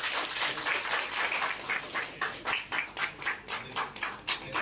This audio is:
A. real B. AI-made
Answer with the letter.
A